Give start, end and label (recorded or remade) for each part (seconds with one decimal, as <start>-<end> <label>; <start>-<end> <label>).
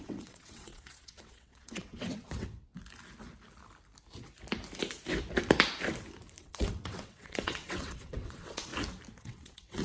0.0-2.7 remade; 2.7-6.4 recorded; 6.4-8.7 remade; 8.7-9.2 recorded; 9.2-9.8 remade